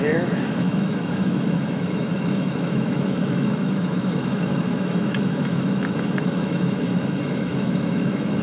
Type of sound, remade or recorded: remade